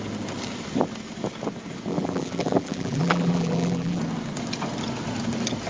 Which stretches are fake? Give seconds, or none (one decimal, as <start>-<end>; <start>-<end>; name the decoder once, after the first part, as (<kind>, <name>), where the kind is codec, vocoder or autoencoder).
1.9-4.0 (vocoder, BigVGAN v2)